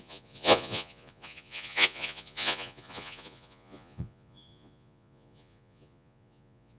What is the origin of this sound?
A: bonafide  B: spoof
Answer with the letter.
B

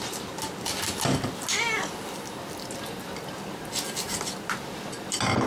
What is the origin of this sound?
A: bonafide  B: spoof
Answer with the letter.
A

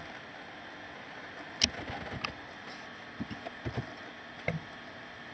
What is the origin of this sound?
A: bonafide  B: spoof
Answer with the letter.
A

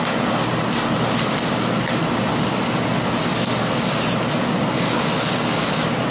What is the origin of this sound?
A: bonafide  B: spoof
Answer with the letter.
A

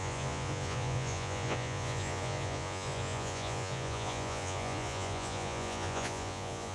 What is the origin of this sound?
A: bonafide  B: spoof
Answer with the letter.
B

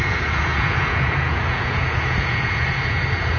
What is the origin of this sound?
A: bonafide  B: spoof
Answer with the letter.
B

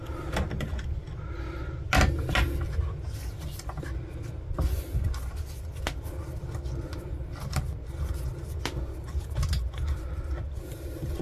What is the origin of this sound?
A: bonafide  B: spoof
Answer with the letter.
A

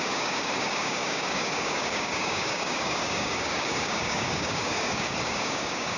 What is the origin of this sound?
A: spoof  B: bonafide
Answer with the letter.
A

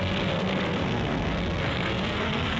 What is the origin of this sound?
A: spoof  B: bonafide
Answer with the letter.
A